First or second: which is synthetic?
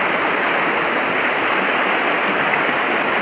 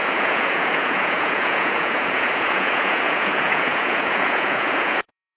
second